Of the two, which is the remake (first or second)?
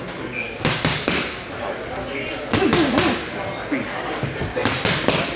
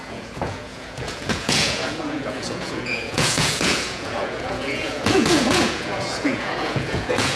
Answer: second